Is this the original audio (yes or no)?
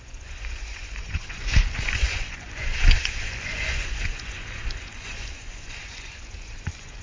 no